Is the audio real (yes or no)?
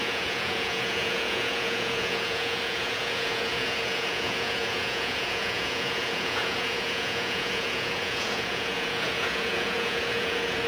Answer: no